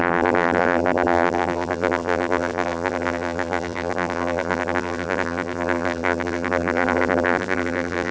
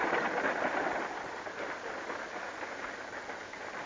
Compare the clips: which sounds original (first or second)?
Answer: second